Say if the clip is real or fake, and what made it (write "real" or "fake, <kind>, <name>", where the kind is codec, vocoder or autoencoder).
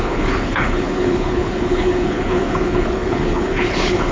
fake, codec, HILCodec